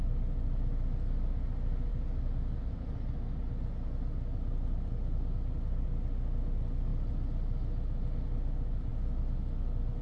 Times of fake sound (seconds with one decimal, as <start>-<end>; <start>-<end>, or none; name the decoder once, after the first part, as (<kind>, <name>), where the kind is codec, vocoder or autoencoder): none